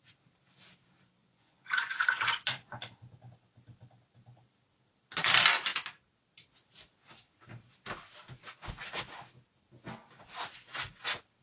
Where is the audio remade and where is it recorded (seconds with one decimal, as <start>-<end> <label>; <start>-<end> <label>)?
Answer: 0.0-1.2 recorded; 1.2-2.9 remade; 2.9-11.4 recorded